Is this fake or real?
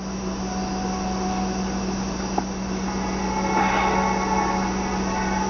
real